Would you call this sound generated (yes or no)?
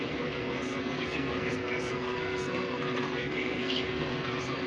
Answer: yes